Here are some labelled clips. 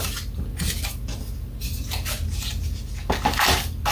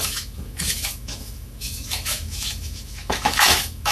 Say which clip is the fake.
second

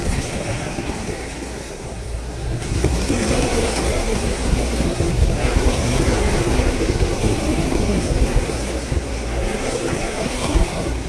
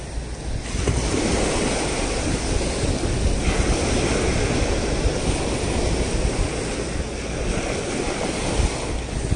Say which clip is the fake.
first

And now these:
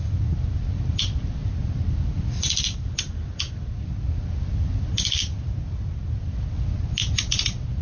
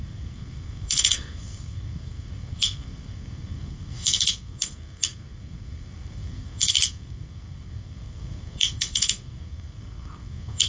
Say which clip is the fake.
second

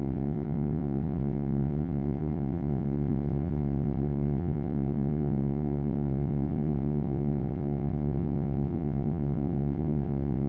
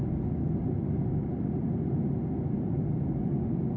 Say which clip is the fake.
first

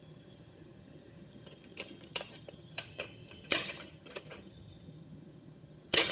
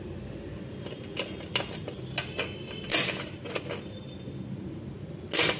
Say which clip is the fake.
first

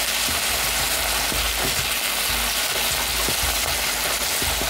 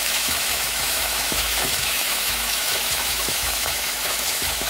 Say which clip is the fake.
second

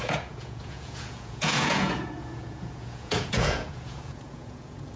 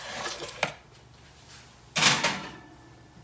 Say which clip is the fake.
first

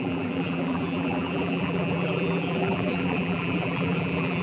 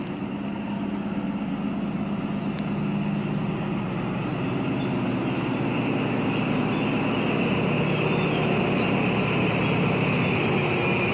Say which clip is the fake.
first